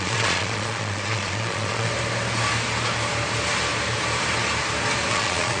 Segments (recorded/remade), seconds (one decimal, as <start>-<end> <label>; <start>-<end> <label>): 0.0-1.9 remade; 1.9-5.1 recorded; 5.1-5.6 remade